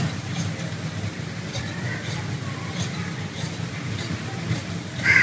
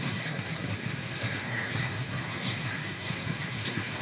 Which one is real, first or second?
first